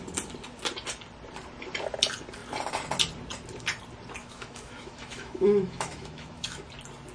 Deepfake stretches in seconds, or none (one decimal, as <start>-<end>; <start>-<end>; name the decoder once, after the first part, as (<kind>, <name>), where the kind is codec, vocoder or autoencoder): 4.2-6.6 (autoencoder, DAC-VAE)